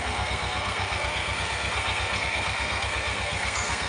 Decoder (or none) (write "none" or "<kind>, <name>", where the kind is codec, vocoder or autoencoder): codec, SNAC